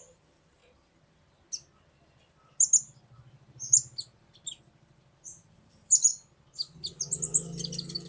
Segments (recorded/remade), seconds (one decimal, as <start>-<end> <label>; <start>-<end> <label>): 0.0-0.6 remade; 0.6-5.5 recorded; 5.5-6.1 remade; 6.1-8.1 recorded